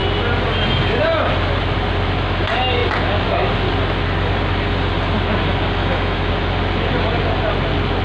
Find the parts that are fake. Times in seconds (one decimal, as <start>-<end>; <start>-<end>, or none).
5.8-6.3